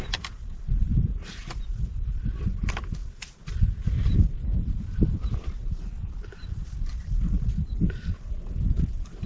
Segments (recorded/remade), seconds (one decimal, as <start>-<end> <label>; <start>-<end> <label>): 0.0-1.1 remade; 1.1-1.8 recorded; 1.8-9.3 remade